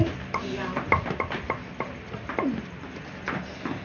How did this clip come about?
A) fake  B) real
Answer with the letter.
B